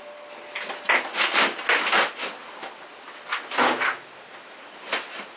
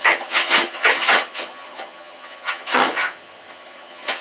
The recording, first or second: first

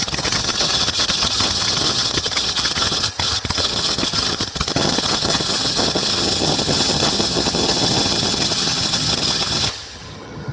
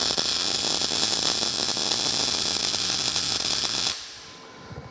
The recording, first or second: second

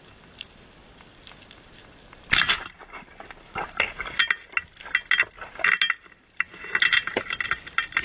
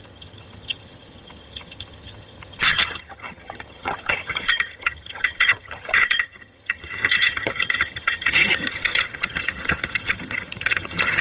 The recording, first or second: first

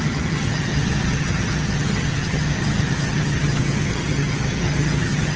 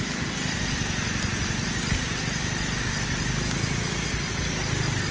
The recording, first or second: second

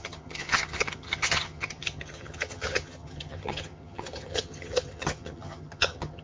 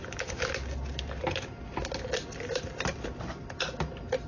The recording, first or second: second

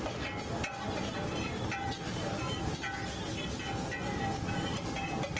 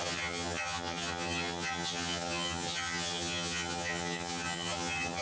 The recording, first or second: first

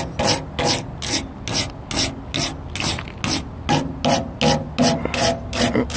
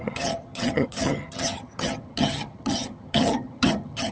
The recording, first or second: first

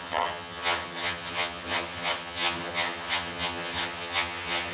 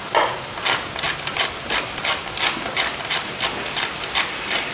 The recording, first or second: second